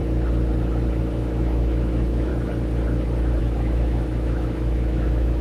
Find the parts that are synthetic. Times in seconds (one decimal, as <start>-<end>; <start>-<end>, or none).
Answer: 1.0-2.3; 3.4-5.4